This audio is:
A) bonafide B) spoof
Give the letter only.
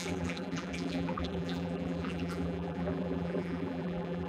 B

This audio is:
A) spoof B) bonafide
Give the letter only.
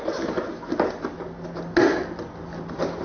B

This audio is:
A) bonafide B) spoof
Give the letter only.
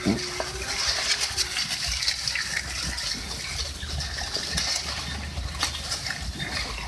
A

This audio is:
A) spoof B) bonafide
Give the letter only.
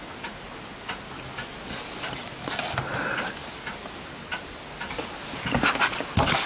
B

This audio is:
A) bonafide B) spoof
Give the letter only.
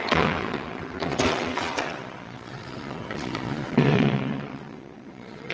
B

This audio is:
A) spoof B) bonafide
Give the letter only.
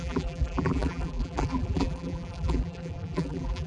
A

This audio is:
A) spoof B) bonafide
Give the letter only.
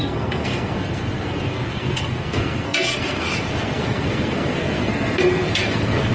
A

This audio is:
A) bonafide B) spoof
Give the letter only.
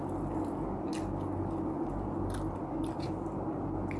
A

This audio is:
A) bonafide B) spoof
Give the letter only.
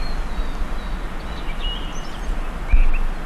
A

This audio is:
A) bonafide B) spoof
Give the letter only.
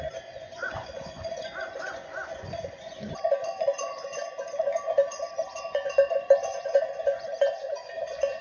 B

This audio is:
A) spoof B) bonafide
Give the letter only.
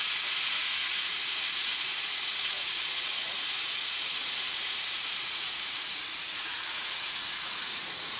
A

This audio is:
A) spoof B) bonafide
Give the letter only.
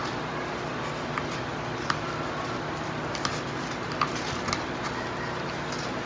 B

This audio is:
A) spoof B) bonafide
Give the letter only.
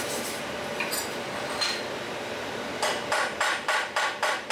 A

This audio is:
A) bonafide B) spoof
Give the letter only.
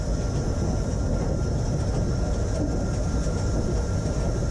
A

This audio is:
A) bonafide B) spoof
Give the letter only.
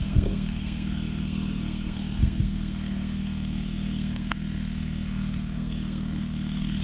B